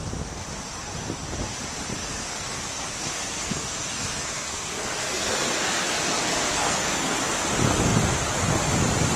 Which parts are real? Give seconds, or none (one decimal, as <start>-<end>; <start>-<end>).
0.0-2.0; 7.2-9.2